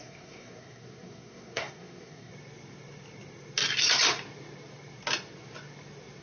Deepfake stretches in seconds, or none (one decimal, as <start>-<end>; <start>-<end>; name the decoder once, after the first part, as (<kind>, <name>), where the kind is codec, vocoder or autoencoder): 0.0-2.3 (codec, SNAC)